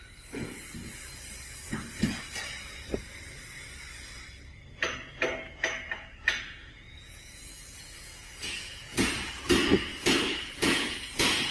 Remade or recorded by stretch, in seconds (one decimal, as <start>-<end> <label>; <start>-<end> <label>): 0.0-6.6 recorded; 6.6-9.4 remade; 9.4-9.9 recorded; 9.9-11.5 remade